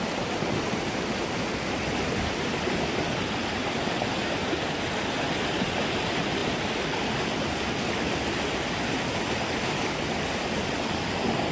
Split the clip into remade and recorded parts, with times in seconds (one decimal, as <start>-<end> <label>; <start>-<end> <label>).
0.0-11.5 recorded